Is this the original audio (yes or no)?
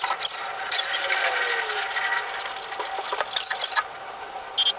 yes